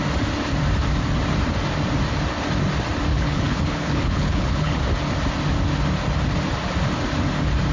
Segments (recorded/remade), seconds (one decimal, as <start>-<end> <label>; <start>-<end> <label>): 0.0-3.1 recorded; 3.1-4.8 remade; 4.8-7.7 recorded